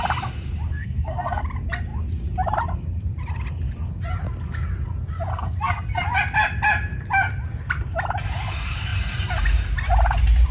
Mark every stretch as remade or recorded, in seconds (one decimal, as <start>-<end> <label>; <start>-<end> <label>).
0.0-0.7 recorded; 0.7-1.4 remade; 1.4-5.3 recorded; 5.3-6.0 remade; 6.0-10.5 recorded